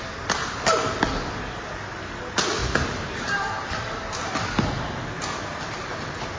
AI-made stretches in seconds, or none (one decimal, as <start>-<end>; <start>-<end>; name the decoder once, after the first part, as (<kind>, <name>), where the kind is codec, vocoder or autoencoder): none